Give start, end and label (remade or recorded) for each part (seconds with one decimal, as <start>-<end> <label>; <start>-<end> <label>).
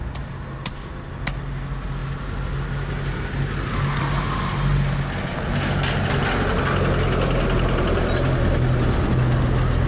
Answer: 0.0-9.9 recorded